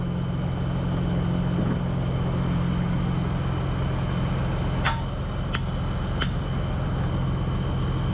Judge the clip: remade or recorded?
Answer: recorded